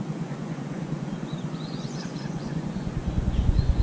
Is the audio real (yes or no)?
no